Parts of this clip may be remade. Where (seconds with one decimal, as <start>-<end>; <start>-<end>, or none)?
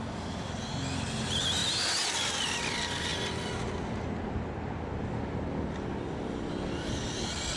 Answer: none